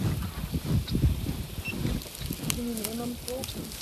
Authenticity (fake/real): real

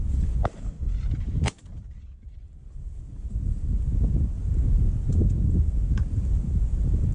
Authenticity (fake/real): real